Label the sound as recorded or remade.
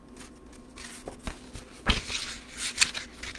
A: recorded